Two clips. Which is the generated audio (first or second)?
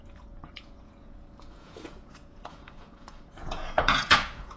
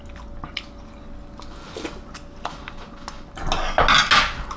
first